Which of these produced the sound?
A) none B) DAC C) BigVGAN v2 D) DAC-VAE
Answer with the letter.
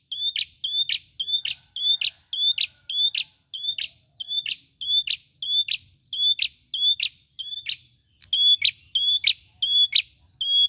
A